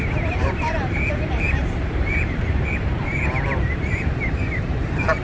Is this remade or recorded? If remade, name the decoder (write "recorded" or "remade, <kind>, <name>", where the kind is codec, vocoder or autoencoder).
remade, vocoder, BigVGAN v2